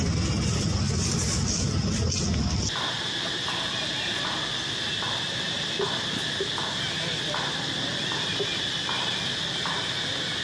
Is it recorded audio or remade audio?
recorded